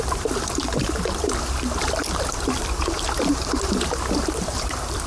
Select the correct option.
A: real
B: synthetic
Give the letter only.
B